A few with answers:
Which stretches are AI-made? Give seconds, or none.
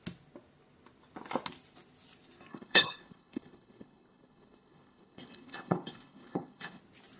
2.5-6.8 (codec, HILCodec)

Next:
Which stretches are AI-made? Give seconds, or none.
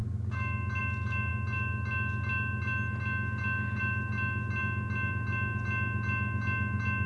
none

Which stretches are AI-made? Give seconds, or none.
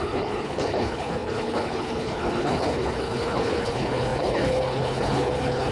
0.0-5.7 (codec, HILCodec)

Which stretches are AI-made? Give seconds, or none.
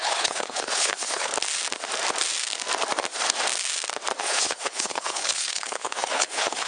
0.0-1.3 (codec, HILCodec); 4.2-6.7